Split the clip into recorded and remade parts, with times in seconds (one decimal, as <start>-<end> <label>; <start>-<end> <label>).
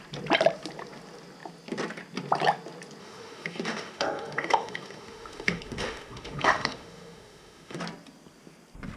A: 0.0-3.0 recorded; 3.0-7.8 remade; 7.8-9.0 recorded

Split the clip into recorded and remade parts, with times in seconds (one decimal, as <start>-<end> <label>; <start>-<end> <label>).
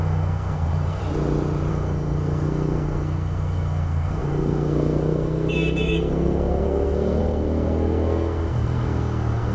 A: 0.0-1.0 remade; 1.0-1.7 recorded; 1.7-9.5 remade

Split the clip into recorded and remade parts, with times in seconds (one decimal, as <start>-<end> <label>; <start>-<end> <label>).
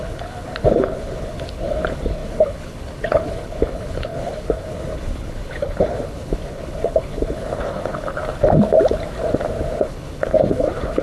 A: 0.0-8.2 remade; 8.2-9.8 recorded; 9.8-11.0 remade